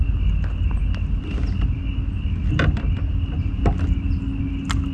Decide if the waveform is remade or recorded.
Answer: recorded